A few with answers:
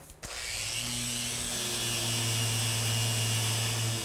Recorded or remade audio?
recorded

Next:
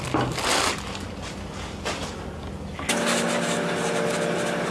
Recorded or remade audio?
recorded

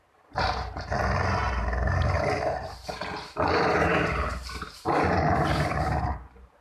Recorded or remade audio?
remade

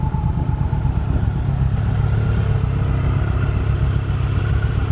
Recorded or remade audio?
recorded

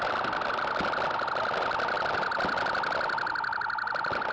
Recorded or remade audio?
recorded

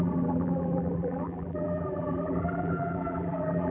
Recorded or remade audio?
remade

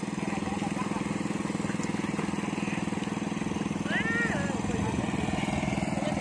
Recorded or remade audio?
recorded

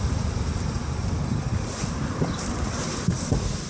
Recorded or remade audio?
recorded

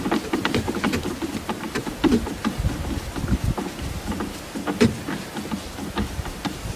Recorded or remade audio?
recorded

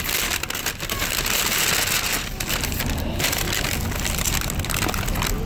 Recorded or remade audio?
recorded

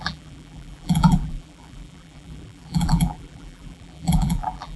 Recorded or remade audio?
remade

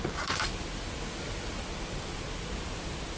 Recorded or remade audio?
recorded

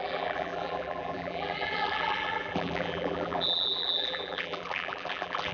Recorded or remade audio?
remade